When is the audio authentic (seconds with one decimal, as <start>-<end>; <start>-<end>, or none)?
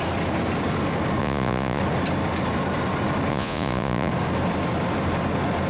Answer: 0.0-1.2; 1.8-3.3; 4.1-5.7